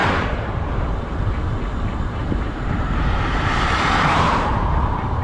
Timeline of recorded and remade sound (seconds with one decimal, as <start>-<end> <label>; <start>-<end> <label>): 0.0-1.1 remade; 1.1-2.2 recorded; 2.2-4.5 remade; 4.5-5.2 recorded